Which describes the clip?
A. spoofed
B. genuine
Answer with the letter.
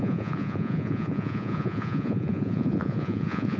A